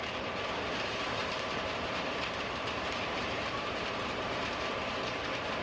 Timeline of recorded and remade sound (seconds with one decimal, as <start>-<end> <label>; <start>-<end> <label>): 0.0-1.2 recorded; 1.2-4.6 remade; 4.6-5.6 recorded